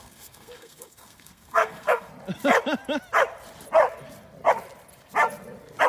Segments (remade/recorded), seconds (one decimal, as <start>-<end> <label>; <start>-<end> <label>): 0.0-2.1 remade; 2.1-5.9 recorded